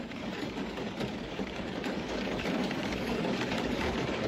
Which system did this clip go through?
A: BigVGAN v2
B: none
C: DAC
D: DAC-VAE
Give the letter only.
C